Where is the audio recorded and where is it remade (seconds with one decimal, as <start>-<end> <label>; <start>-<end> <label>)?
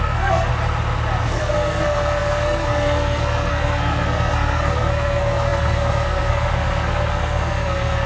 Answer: 0.0-0.5 remade; 0.5-1.2 recorded; 1.2-8.1 remade